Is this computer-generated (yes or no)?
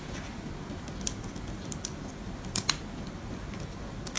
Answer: no